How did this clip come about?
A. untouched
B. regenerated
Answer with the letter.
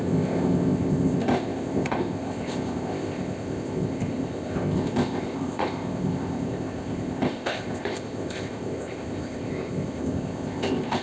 B